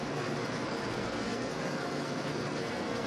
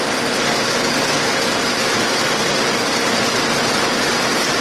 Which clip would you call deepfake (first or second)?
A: first